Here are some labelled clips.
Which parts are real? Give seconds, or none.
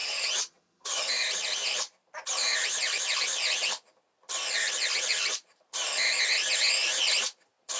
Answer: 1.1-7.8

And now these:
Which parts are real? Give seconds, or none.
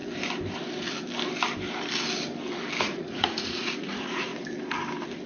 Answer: 0.0-2.8; 4.3-5.3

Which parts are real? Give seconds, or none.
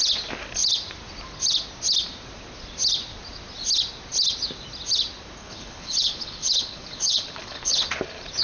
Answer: 0.0-5.4; 7.9-8.4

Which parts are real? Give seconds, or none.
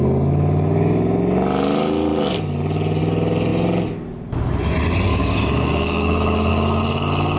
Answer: 0.0-5.1; 6.8-7.4